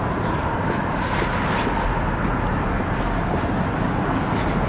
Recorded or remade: recorded